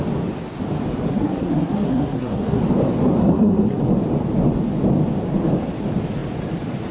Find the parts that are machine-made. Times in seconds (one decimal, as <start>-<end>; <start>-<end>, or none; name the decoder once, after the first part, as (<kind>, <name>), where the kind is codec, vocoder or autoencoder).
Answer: 1.1-2.6 (codec, SNAC); 3.2-3.8